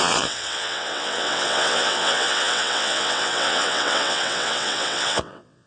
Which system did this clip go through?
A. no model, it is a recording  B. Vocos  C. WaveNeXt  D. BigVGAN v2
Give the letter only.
C